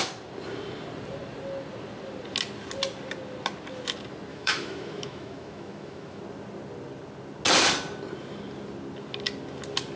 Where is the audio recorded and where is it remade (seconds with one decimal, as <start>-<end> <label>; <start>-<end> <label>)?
0.0-4.3 recorded; 4.3-6.2 remade; 6.2-10.0 recorded